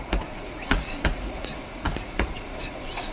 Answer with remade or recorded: remade